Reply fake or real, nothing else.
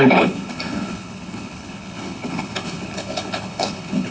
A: fake